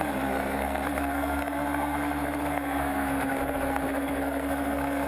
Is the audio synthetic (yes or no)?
yes